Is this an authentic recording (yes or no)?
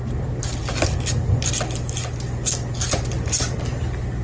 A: yes